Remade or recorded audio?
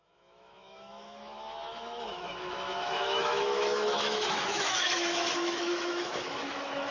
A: remade